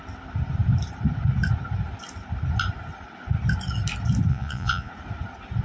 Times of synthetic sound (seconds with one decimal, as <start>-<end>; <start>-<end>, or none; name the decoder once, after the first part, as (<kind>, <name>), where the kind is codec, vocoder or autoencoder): 4.3-4.9 (vocoder, Vocos)